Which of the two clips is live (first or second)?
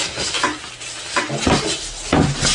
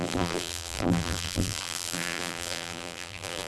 first